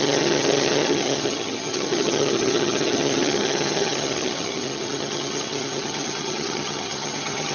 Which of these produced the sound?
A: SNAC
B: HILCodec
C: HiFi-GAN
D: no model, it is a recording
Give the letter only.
C